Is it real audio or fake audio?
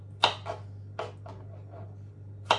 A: real